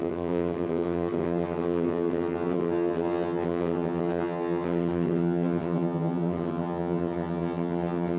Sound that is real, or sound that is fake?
fake